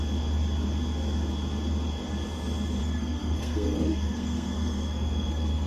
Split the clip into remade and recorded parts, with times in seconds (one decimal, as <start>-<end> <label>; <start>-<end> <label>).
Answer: 0.0-2.8 recorded; 2.8-5.7 remade

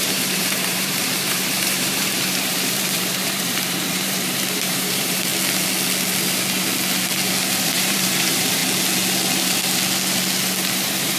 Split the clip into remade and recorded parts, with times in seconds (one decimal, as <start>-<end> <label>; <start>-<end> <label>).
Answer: 0.0-5.3 remade; 5.3-7.6 recorded; 7.6-8.6 remade; 8.6-10.7 recorded; 10.7-11.2 remade